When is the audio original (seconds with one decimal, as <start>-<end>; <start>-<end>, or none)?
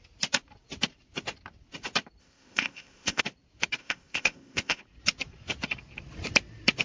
0.0-2.2; 3.2-3.8; 4.8-6.8